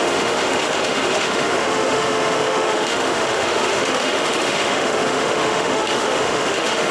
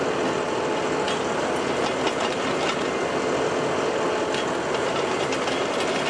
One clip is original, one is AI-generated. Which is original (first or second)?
second